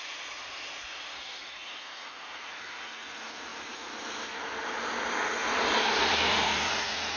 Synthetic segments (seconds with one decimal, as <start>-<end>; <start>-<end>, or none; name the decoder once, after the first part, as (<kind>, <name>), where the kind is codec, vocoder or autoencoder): 5.4-6.7 (vocoder, BigVGAN v2)